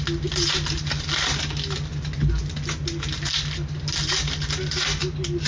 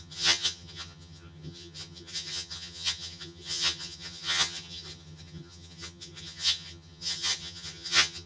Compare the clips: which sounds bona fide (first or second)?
first